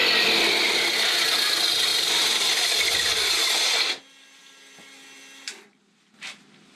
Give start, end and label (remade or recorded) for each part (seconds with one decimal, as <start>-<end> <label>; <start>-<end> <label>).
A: 0.0-6.8 recorded